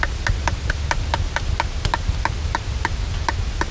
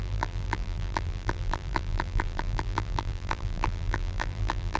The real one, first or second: first